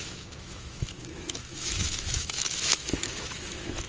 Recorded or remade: remade